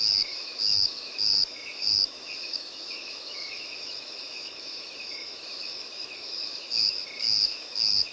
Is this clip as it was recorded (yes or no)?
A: no